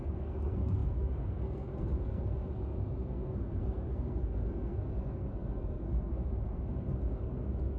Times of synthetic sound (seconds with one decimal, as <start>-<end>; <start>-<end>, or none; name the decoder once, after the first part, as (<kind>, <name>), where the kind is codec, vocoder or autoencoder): 0.0-7.8 (codec, SNAC)